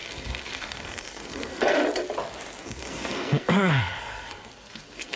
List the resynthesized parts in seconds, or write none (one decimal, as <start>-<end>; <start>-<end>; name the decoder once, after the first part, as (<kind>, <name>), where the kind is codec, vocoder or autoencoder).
0.0-1.8 (codec, SNAC); 2.6-5.2